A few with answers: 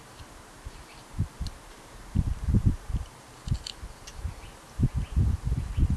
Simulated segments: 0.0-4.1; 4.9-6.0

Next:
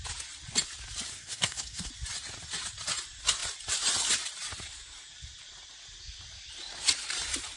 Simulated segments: 1.1-1.9

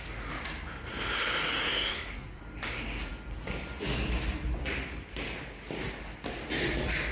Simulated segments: 1.7-2.4

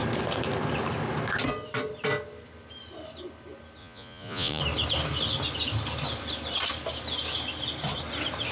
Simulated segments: 3.8-4.6